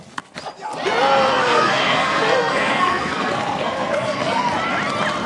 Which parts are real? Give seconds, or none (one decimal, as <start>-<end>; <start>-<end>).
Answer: 0.0-1.3; 4.5-5.3